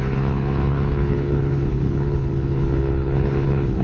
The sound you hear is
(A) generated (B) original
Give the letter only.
A